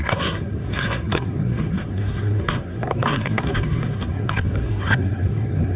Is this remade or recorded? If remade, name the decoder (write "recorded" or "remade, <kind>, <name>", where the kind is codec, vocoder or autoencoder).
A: remade, codec, SNAC